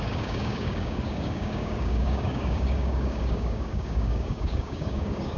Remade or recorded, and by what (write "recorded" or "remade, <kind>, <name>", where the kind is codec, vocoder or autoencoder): remade, codec, DAC